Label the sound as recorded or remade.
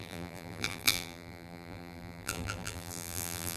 remade